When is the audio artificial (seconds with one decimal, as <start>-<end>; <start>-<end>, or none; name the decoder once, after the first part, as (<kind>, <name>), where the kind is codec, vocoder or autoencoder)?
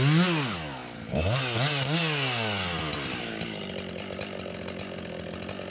none